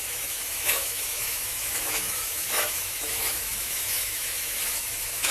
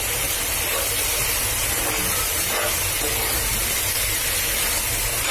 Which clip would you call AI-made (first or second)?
first